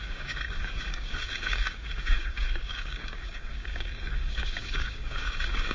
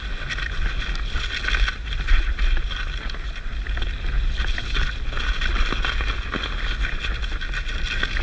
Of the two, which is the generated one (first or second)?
first